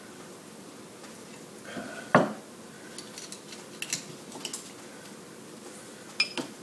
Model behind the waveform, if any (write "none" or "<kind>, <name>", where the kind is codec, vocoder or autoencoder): none